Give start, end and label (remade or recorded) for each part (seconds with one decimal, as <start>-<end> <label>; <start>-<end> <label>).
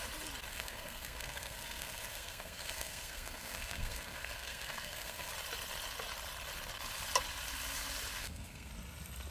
0.0-0.5 recorded; 0.5-5.3 remade; 5.3-8.2 recorded; 8.2-8.7 remade; 8.7-9.3 recorded